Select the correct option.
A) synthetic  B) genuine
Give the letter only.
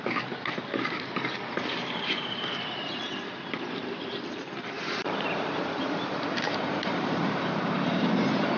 A